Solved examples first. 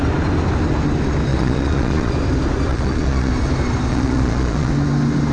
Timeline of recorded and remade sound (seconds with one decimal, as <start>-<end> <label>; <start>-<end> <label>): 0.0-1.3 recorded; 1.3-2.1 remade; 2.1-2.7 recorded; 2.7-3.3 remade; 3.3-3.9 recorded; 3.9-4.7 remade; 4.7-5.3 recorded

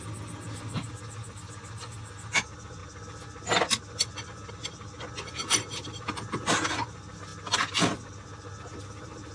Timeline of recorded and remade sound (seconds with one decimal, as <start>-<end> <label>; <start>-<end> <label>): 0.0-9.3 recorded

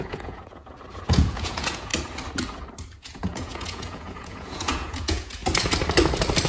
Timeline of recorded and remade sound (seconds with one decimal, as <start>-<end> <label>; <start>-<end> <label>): 0.0-0.6 remade; 0.6-1.1 recorded; 1.1-1.9 remade; 1.9-3.0 recorded; 3.0-5.4 remade; 5.4-6.5 recorded

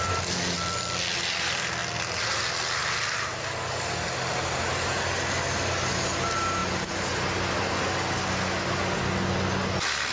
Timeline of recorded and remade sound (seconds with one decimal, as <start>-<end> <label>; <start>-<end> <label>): 0.0-10.1 recorded